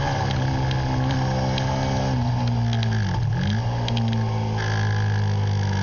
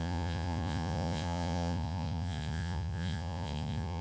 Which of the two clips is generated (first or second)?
second